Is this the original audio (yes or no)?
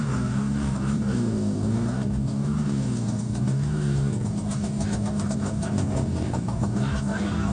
no